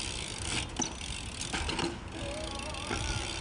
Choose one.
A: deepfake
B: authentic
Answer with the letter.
B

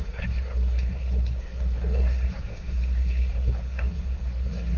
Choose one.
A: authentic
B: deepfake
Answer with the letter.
B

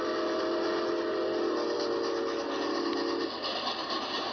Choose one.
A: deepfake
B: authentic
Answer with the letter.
B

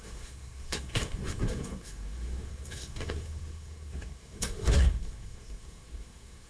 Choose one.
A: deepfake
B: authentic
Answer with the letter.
A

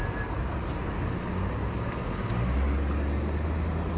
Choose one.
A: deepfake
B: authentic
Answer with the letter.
B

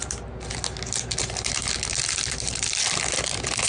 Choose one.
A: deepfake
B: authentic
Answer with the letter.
B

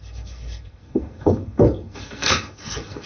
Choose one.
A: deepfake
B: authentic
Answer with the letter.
A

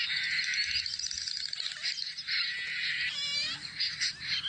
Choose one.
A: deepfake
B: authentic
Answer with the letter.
B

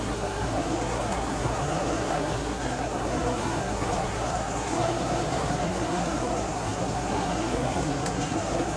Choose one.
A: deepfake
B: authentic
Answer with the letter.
A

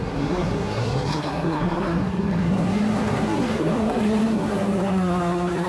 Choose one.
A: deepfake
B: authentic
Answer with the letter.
A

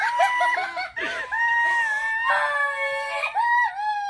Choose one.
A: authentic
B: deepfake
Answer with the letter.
A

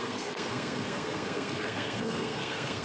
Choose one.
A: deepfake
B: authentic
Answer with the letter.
A